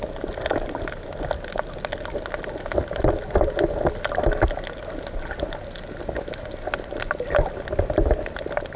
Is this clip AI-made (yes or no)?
no